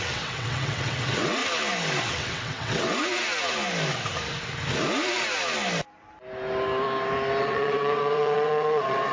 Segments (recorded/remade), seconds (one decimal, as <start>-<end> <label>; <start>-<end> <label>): 0.0-1.4 remade; 1.4-2.1 recorded; 2.1-3.0 remade; 3.0-7.4 recorded; 7.4-9.1 remade